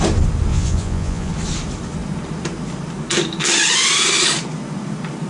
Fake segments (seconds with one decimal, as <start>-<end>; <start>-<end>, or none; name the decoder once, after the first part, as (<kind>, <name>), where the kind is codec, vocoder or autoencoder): 0.5-1.3 (vocoder, Vocos)